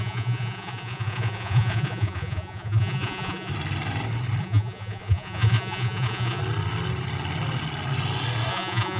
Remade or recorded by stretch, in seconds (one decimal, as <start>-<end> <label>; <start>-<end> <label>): 0.0-3.5 remade; 3.5-4.4 recorded; 4.4-6.4 remade; 6.4-8.5 recorded; 8.5-9.0 remade